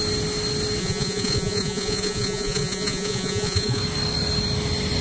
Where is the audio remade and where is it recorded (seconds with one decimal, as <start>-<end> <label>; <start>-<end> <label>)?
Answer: 0.0-0.8 recorded; 0.8-3.8 remade; 3.8-5.0 recorded